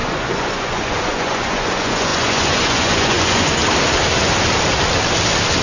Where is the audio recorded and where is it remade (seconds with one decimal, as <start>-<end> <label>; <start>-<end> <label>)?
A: 0.0-3.6 remade; 3.6-5.6 recorded